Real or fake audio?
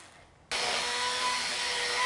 real